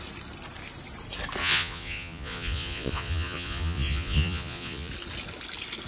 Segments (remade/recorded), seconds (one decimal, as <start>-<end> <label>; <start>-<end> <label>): 0.0-1.4 recorded; 1.4-4.9 remade; 4.9-5.9 recorded